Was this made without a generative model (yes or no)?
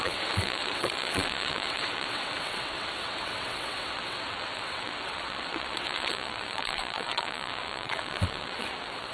no